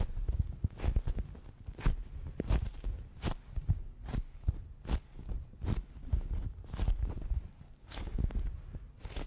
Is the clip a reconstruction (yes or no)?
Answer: no